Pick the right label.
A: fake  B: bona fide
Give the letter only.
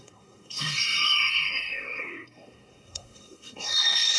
A